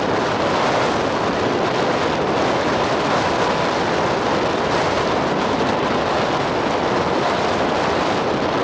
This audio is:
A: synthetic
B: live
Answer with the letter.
B